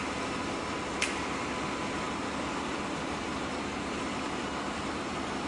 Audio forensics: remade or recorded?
recorded